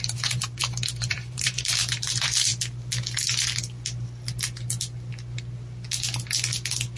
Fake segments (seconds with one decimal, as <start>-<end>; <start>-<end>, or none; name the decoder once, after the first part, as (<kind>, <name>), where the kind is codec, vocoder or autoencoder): 0.0-2.5 (vocoder, BigVGAN v2)